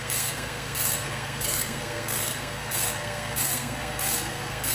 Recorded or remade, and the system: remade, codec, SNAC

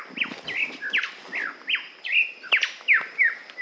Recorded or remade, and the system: recorded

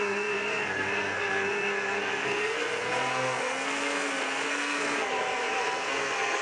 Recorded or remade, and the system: remade, codec, SNAC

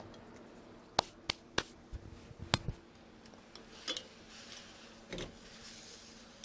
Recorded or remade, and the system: recorded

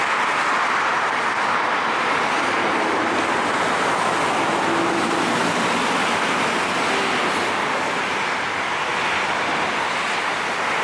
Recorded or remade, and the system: recorded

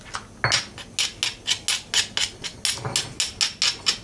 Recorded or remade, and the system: recorded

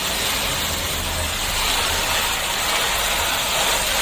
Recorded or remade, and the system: recorded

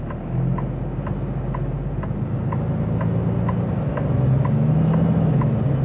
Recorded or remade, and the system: recorded